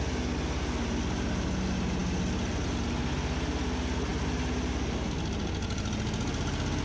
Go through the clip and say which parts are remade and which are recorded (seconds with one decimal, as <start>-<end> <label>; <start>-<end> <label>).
0.0-6.8 recorded